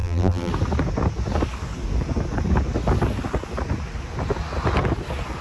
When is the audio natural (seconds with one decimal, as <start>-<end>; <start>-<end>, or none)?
0.5-5.4